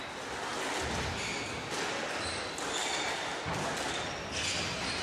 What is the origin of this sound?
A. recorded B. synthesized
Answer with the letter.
A